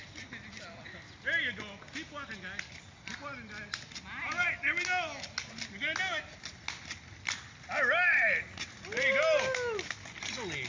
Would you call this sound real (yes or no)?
yes